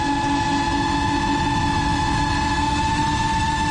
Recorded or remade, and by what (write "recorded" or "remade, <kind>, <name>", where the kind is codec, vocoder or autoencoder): remade, autoencoder, DAC-VAE